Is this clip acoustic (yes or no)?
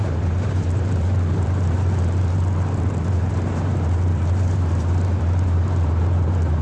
no